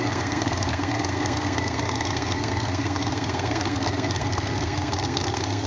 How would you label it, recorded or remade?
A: remade